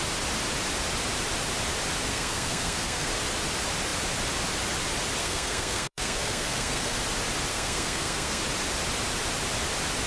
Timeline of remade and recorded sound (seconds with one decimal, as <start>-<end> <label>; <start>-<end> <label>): 0.0-2.1 recorded; 2.1-3.1 remade; 3.1-5.2 recorded; 5.2-7.0 remade; 7.0-7.5 recorded; 7.5-8.4 remade; 8.4-10.1 recorded